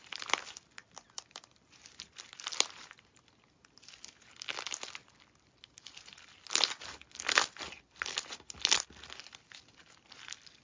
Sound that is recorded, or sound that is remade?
recorded